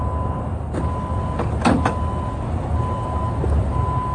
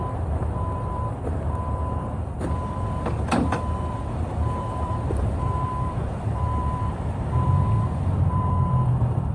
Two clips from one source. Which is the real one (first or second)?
first